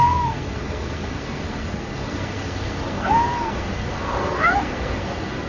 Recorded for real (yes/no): no